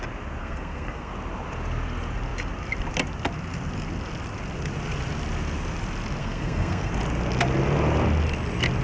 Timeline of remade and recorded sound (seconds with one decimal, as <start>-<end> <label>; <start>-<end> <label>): 0.0-0.4 recorded; 0.4-1.1 remade; 1.1-6.2 recorded; 6.2-6.9 remade; 6.9-8.8 recorded